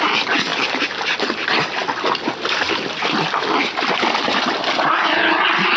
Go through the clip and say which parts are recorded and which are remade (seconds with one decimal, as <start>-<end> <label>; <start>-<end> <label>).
0.0-0.5 recorded; 0.5-1.2 remade; 1.2-5.8 recorded